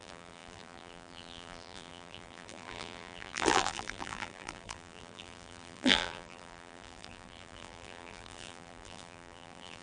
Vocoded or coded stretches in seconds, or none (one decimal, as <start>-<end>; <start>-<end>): 0.0-9.8